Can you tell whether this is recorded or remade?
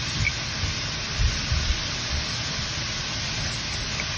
recorded